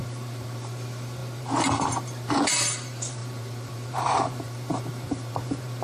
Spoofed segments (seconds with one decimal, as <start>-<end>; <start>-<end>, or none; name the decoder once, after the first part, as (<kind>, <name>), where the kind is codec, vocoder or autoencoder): 0.0-5.8 (vocoder, BigVGAN v2)

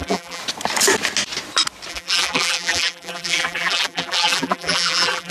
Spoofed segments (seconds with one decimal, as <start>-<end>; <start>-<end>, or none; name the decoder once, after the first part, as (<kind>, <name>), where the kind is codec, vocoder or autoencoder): 0.0-0.4 (vocoder, BigVGAN v2); 1.9-5.3

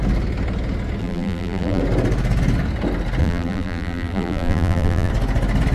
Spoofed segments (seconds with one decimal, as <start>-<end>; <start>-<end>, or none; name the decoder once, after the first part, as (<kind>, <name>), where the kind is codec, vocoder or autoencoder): 1.0-1.8 (vocoder, BigVGAN v2); 3.2-5.1

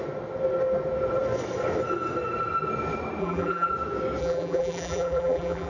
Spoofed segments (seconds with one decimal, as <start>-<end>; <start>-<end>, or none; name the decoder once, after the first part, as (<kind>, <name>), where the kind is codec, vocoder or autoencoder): 3.2-3.7 (vocoder, BigVGAN v2); 4.2-5.7